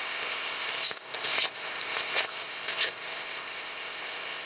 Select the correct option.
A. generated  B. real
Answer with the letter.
A